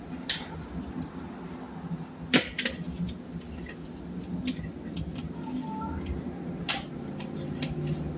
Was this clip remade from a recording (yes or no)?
no